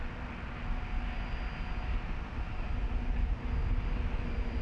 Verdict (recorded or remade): recorded